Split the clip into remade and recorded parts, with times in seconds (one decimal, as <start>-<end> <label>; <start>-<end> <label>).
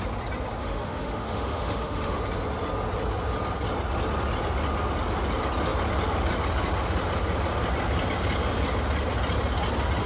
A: 0.0-0.6 recorded; 0.6-2.2 remade; 2.2-10.1 recorded